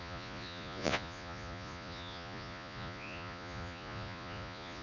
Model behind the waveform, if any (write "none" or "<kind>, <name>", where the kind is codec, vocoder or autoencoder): vocoder, Vocos